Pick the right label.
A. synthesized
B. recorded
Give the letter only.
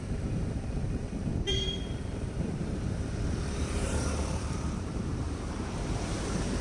A